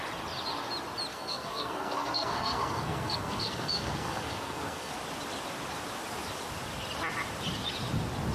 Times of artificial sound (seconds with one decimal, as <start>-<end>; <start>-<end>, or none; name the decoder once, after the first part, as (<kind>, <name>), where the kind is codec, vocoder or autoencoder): 1.1-4.9 (codec, SNAC)